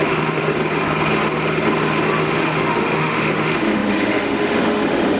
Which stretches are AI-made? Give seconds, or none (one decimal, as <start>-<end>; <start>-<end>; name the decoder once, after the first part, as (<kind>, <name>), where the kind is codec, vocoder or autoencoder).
0.0-0.5 (autoencoder, DAC-VAE); 2.2-5.2